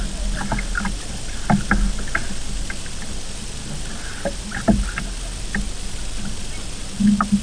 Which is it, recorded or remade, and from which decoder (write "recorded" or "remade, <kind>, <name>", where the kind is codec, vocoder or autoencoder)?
recorded